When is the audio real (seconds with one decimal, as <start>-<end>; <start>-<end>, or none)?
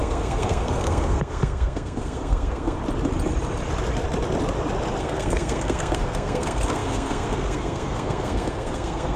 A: 2.8-5.0